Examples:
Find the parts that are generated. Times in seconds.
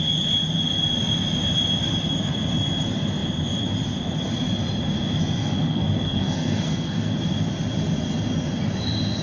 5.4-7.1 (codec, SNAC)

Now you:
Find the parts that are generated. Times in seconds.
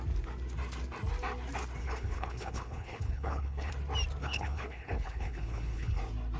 1.8-3.7 (codec, HILCodec); 4.2-6.0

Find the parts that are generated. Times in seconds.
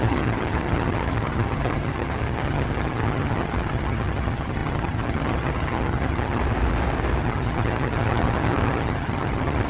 0.0-6.4 (vocoder, HiFi-GAN); 7.2-9.7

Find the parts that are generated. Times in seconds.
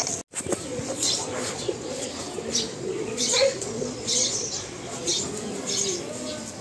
0.7-2.1 (vocoder, Vocos); 2.7-5.1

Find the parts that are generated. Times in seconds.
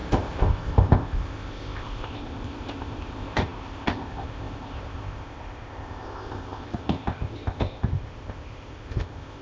0.0-9.4 (codec, ZipCodec)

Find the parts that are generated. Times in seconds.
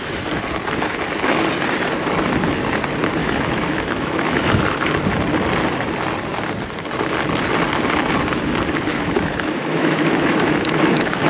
3.2-4.6 (autoencoder, DAC-VAE); 8.9-11.3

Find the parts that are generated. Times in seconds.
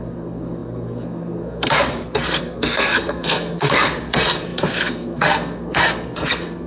0.0-6.7 (codec, SNAC)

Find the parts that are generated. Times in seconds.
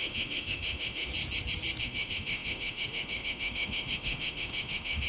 0.0-1.1 (autoencoder, DAC-VAE); 1.8-5.1